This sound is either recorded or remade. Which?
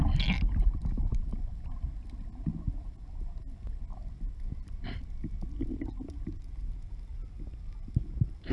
recorded